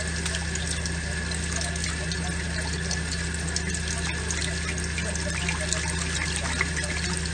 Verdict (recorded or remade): recorded